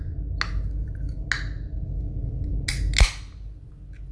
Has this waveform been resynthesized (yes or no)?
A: no